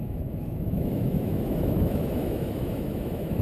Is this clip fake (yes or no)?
yes